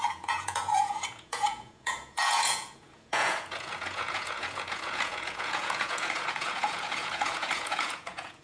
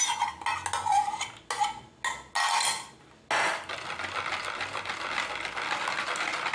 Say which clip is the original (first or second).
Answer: second